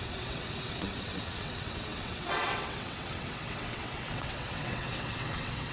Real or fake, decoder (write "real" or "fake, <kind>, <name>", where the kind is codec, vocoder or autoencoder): fake, vocoder, WaveNeXt